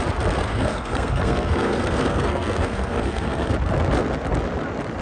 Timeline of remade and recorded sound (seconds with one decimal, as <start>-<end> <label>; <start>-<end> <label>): 0.0-0.5 recorded; 0.5-3.5 remade; 3.5-5.0 recorded